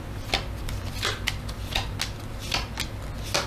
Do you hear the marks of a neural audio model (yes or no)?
no